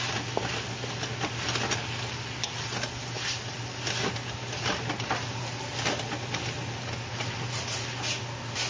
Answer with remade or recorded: recorded